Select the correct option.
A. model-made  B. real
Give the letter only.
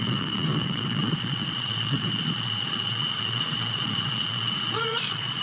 A